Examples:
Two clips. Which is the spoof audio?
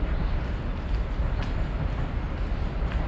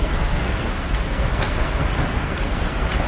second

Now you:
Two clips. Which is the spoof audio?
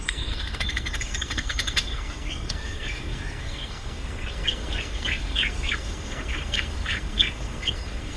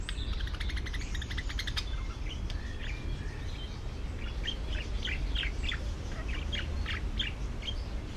first